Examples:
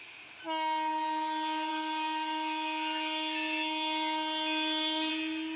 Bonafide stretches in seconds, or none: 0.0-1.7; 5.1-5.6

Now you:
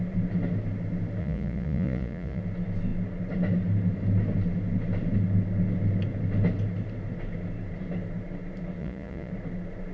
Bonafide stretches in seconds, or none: 0.0-1.2; 2.4-8.8; 9.3-9.9

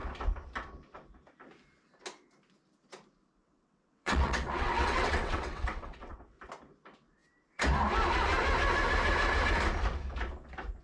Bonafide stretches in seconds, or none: 0.0-3.4; 6.4-10.8

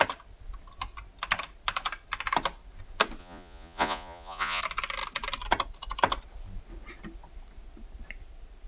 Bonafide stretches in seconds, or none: 0.0-3.2; 4.6-8.7